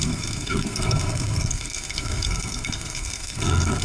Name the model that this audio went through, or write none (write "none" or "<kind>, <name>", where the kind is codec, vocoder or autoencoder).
codec, SNAC